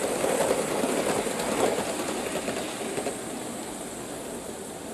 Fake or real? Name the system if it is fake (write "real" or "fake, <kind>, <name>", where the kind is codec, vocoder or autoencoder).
real